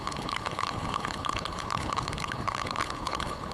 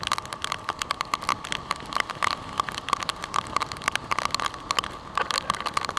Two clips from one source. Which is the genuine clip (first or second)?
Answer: second